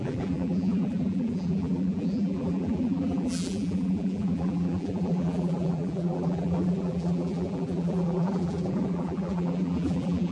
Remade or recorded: remade